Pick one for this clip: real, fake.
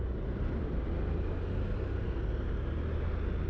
real